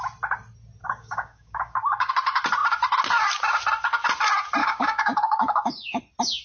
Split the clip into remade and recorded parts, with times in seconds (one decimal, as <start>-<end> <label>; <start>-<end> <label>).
0.0-0.8 recorded; 0.8-2.1 remade; 2.1-4.6 recorded; 4.6-6.0 remade; 6.0-6.4 recorded